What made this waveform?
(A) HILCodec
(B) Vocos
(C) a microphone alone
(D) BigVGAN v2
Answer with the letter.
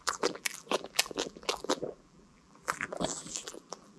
D